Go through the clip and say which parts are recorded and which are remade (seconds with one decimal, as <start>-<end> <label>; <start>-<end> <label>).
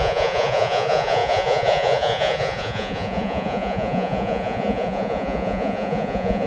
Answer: 0.0-6.5 remade